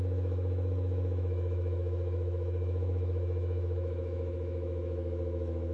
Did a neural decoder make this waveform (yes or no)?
yes